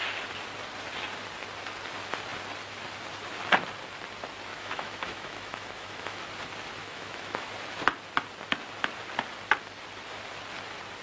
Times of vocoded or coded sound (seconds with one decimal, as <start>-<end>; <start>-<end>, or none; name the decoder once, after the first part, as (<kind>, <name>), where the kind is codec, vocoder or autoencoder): 4.5-6.3 (autoencoder, DAC-VAE); 6.8-7.5